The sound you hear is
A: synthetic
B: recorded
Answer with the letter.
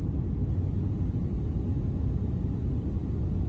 B